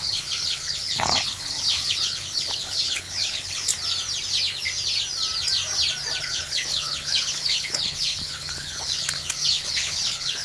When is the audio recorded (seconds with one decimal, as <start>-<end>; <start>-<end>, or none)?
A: 3.7-6.2